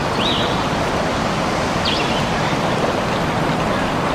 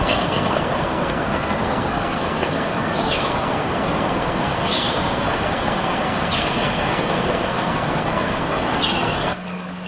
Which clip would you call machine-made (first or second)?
second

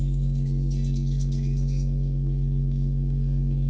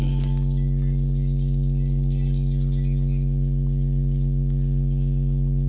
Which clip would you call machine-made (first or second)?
first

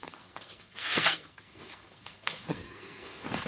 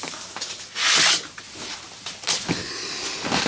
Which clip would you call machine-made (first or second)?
first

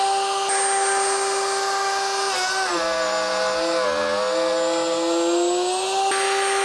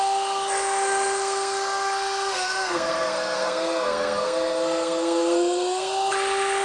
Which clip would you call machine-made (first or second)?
second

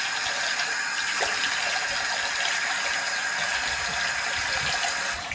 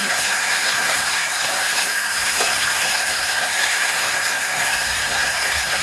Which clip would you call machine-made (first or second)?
second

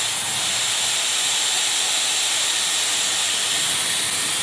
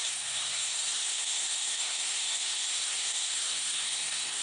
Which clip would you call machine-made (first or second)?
second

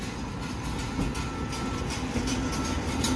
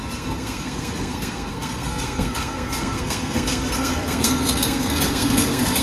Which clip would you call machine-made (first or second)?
second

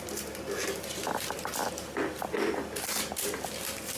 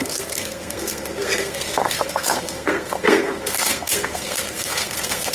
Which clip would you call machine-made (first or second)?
second